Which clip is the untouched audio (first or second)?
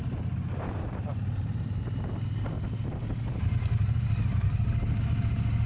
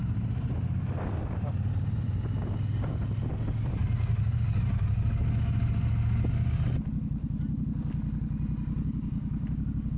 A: second